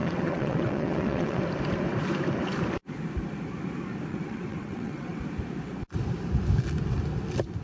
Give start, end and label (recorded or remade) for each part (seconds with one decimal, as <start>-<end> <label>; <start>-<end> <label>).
0.0-1.4 remade; 1.4-4.1 recorded; 4.1-5.2 remade; 5.2-7.6 recorded